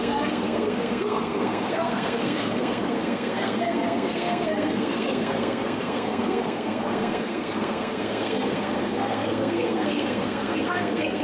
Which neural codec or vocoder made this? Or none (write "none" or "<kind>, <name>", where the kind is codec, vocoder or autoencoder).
codec, SNAC